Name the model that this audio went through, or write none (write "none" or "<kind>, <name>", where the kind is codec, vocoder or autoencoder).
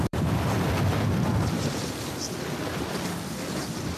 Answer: vocoder, BigVGAN v2